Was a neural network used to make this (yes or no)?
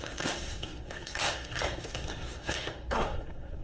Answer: yes